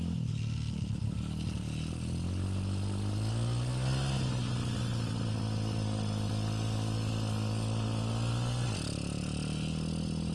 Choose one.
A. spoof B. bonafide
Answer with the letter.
B